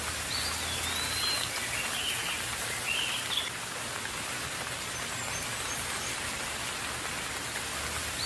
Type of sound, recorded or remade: recorded